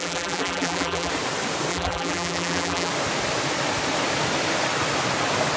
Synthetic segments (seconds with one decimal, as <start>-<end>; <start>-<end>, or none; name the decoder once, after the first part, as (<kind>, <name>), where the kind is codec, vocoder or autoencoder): 0.0-1.1 (vocoder, BigVGAN v2); 1.7-2.9